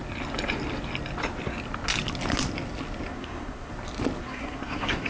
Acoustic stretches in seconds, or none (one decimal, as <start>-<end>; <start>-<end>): 0.0-3.1; 3.7-4.2